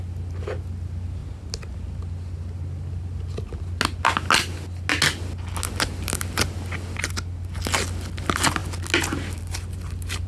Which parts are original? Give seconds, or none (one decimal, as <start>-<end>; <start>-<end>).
0.0-10.3